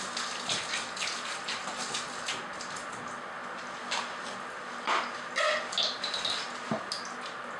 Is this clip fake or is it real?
real